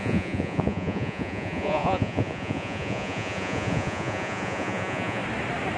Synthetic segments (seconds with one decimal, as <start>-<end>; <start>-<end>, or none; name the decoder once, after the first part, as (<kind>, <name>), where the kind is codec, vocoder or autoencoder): 0.0-5.2 (vocoder, Vocos)